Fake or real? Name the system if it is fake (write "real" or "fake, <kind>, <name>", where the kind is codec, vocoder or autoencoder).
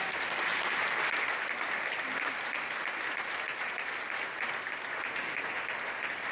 real